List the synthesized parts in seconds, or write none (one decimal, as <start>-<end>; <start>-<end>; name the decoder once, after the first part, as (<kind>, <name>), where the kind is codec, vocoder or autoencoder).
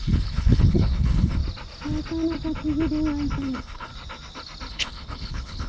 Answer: 0.0-1.4 (codec, HILCodec); 3.4-3.9; 4.7-5.7